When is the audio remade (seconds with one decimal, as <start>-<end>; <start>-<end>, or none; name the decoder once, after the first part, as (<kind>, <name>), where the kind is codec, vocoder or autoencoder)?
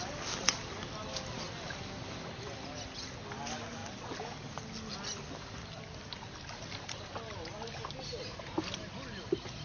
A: none